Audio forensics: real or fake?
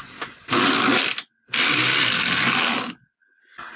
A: real